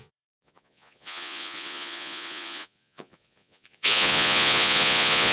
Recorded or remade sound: remade